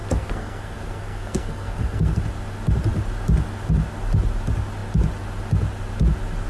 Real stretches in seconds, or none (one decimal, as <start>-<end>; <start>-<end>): 2.2-6.5